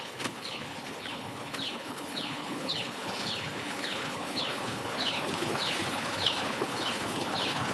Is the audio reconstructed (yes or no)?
yes